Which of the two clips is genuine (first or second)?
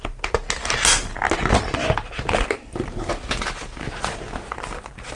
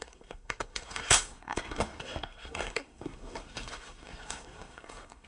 first